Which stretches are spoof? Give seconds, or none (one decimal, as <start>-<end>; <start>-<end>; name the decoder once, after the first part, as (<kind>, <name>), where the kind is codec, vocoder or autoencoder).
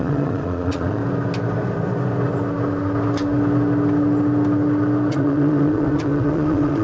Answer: 0.0-1.0 (vocoder, Vocos); 5.1-6.8